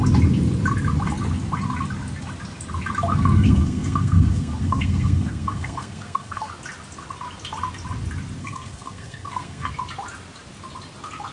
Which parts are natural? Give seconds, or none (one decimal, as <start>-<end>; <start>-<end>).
0.0-3.1; 6.5-8.4; 9.7-11.3